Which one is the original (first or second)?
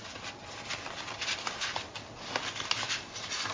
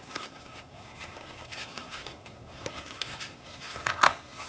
first